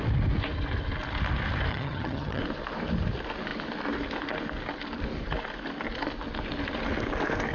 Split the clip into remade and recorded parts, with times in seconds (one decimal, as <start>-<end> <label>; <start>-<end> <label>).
0.0-1.7 recorded; 1.7-2.4 remade; 2.4-7.5 recorded